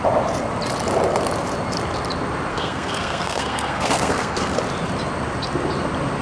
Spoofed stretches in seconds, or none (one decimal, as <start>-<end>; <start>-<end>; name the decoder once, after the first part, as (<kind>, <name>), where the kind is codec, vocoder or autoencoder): 2.5-4.6 (codec, SNAC)